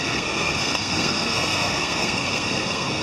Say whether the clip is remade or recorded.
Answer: remade